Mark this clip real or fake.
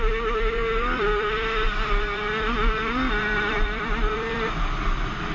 fake